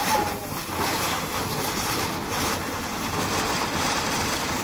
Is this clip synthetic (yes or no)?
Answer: yes